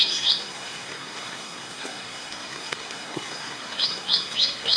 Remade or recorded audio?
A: remade